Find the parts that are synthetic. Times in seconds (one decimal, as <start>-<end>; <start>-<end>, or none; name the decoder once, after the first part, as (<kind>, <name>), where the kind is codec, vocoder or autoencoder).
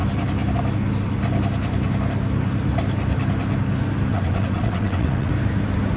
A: 4.1-5.3 (vocoder, WaveNeXt)